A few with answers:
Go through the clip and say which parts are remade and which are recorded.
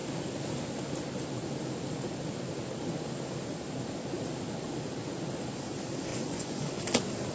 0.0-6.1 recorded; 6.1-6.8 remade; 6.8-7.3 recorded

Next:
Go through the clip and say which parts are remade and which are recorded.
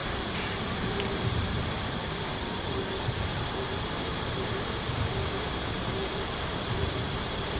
0.0-4.6 remade; 4.6-6.1 recorded; 6.1-7.6 remade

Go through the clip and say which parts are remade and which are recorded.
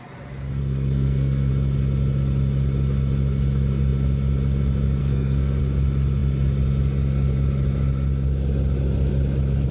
0.0-0.6 recorded; 0.6-1.5 remade; 1.5-5.0 recorded; 5.0-5.6 remade; 5.6-9.7 recorded